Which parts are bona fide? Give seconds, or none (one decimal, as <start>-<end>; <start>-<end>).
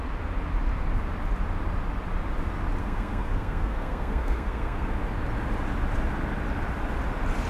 0.0-2.8; 4.9-7.5